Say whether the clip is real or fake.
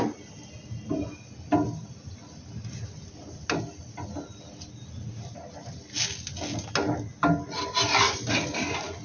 real